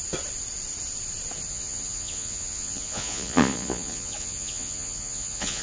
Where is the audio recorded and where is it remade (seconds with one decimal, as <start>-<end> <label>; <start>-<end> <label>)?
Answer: 0.0-1.5 recorded; 1.5-5.6 remade